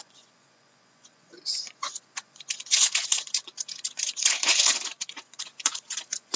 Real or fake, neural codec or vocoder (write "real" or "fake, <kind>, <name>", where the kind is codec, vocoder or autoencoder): fake, vocoder, Vocos